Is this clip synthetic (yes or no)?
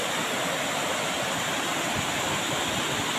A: no